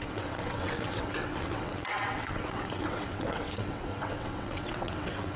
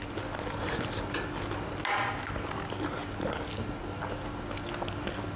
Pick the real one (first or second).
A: second